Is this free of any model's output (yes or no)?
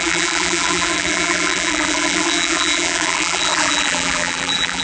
no